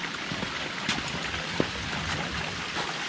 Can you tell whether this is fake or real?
real